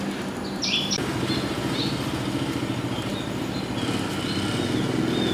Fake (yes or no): no